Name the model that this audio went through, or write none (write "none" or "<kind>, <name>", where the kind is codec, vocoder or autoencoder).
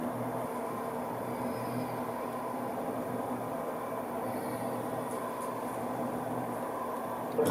none